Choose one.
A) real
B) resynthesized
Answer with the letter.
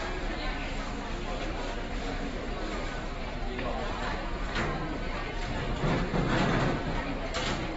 A